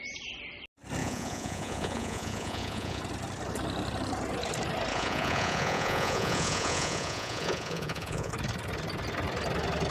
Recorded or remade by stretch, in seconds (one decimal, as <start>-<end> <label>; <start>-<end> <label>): 0.0-1.0 recorded; 1.0-3.0 remade; 3.0-4.9 recorded; 4.9-8.3 remade; 8.3-9.9 recorded